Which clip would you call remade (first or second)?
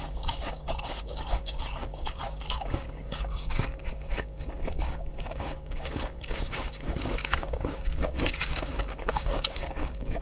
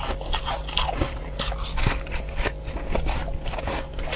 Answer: first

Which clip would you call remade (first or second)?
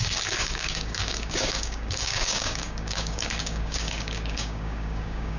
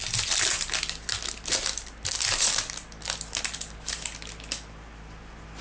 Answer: first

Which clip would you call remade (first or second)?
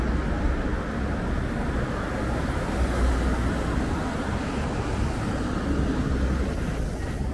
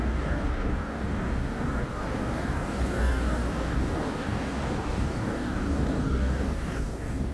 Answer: second